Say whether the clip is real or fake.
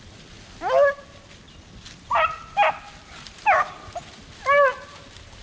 real